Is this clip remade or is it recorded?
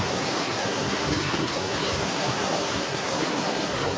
remade